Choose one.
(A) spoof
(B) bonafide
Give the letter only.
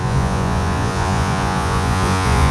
A